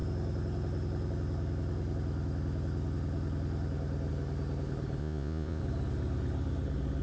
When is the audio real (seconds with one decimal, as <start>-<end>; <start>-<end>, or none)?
0.0-5.0; 5.6-7.0